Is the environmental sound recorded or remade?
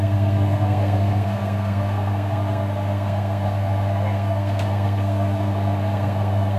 remade